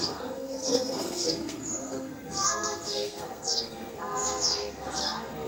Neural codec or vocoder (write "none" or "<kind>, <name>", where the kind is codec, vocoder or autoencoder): codec, SNAC